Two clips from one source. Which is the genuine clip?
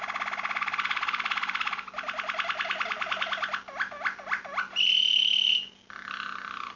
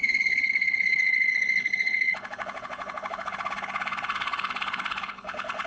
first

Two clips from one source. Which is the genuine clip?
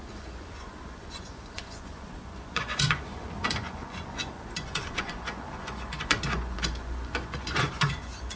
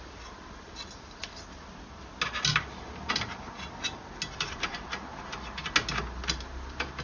second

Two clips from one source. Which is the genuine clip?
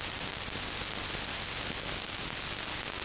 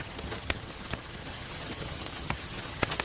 first